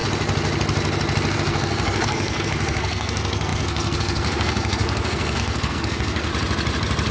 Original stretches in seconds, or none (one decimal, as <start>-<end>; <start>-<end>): 0.0-1.3; 6.3-7.1